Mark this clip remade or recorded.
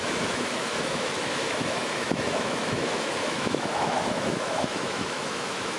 remade